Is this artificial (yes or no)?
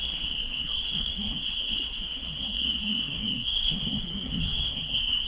yes